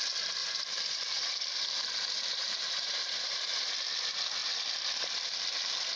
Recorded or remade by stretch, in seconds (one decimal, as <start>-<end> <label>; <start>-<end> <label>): 0.0-0.4 recorded; 0.4-1.3 remade; 1.3-2.3 recorded; 2.3-3.7 remade; 3.7-6.0 recorded

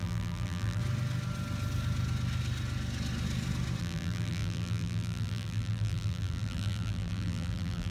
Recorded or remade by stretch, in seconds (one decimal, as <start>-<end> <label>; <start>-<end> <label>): 0.0-0.8 remade; 0.8-3.8 recorded; 3.8-7.9 remade

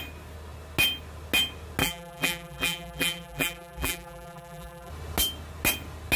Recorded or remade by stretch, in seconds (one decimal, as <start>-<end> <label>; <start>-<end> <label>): 0.0-1.8 recorded; 1.8-4.9 remade; 4.9-6.2 recorded